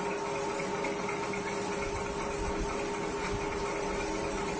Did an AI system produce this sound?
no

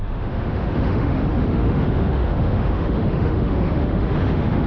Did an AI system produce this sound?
yes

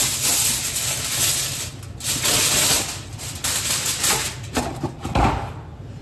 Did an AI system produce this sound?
no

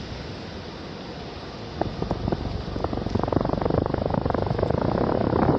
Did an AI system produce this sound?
no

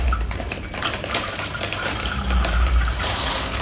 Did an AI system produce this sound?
yes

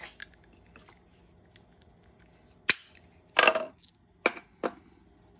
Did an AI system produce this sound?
no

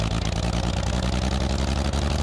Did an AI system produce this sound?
no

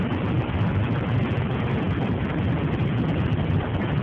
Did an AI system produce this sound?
no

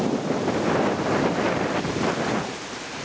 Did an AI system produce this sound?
no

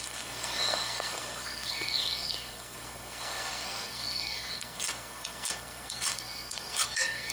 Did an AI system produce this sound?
yes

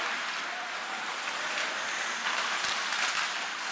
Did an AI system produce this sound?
no